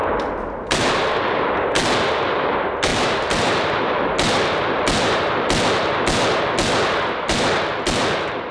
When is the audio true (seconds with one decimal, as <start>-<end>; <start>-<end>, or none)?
0.0-8.5

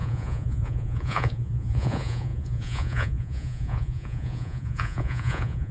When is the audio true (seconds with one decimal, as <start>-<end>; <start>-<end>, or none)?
none

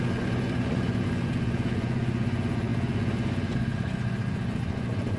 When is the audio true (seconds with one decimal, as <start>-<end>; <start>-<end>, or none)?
none

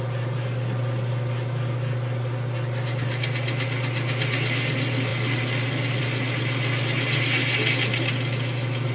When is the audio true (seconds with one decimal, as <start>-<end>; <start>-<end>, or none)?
0.0-8.9

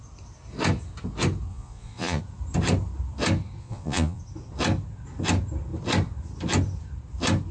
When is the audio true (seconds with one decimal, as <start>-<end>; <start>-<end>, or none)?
0.0-1.5; 2.2-3.6; 4.2-7.5

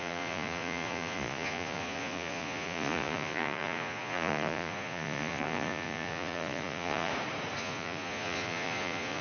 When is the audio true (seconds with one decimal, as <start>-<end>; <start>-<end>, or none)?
7.1-7.6

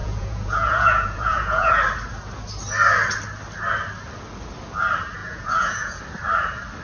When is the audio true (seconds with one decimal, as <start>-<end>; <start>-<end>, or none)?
1.7-5.2; 6.0-6.8

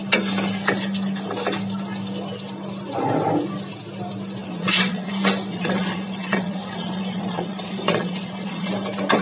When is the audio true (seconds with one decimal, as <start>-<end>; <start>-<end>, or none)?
0.0-4.4; 5.1-5.5; 8.7-9.2